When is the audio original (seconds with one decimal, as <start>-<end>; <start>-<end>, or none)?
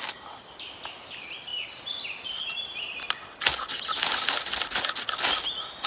0.0-5.9